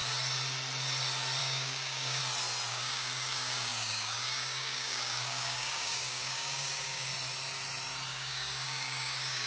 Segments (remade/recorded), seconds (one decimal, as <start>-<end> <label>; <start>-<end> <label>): 0.0-1.4 recorded; 1.4-2.2 remade; 2.2-2.7 recorded; 2.7-7.1 remade; 7.1-8.1 recorded; 8.1-9.5 remade